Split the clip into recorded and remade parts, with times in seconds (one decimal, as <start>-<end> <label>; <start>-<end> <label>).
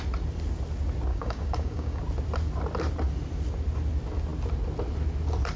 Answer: 0.0-1.1 recorded; 1.1-2.0 remade; 2.0-5.6 recorded